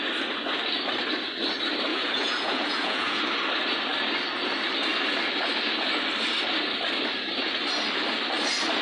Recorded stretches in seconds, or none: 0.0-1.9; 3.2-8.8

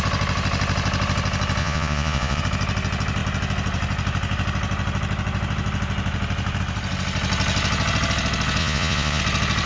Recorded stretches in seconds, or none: 0.0-1.6; 2.4-8.6; 9.2-9.7